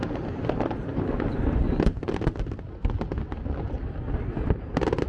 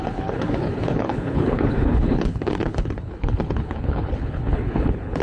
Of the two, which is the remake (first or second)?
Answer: second